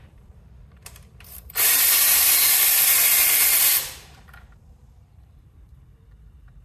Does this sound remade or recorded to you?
remade